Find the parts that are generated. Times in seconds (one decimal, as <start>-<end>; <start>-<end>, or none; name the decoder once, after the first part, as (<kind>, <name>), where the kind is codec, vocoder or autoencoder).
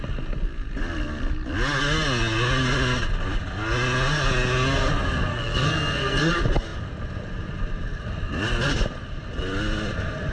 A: 5.3-6.3 (codec, SNAC)